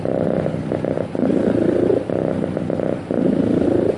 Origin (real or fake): real